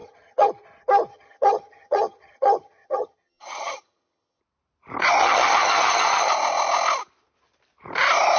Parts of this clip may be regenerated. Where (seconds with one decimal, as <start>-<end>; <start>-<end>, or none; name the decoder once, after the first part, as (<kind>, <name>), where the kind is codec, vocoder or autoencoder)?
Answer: 0.0-0.5 (vocoder, HiFi-GAN); 1.1-4.4; 5.2-6.3